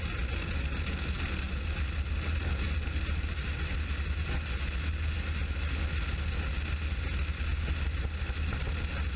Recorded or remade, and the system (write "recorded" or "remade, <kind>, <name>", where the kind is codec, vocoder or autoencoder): recorded